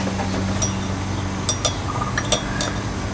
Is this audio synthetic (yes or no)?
no